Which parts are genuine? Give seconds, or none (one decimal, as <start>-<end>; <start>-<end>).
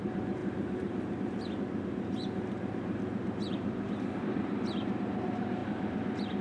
none